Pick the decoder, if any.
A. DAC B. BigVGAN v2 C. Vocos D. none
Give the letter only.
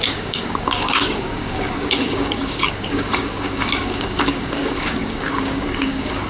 A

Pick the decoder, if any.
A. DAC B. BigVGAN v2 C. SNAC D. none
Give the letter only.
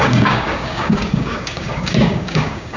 A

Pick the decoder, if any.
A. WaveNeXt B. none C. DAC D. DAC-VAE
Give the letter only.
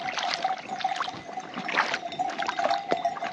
B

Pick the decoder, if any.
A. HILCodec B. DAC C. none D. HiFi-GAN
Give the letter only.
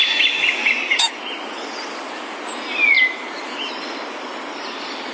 C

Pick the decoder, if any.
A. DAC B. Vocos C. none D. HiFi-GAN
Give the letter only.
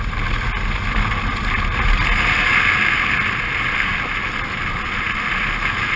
C